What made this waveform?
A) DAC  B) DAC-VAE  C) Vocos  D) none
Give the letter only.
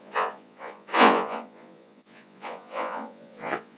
C